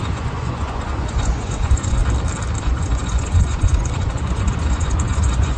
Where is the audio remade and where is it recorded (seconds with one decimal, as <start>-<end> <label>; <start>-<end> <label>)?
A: 0.0-2.0 remade; 2.0-2.6 recorded; 2.6-5.6 remade